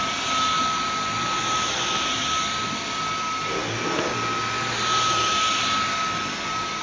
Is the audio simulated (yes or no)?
no